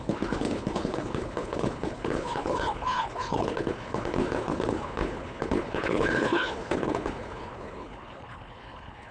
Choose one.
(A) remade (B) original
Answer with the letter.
A